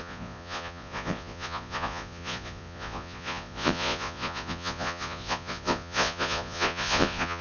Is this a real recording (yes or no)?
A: no